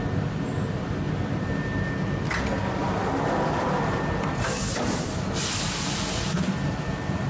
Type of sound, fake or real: real